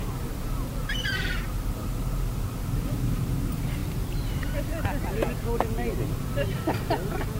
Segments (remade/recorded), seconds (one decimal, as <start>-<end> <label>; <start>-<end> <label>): 0.0-7.4 recorded